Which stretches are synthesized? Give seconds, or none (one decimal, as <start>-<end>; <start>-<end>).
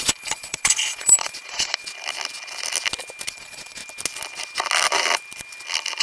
0.0-1.8; 3.3-3.8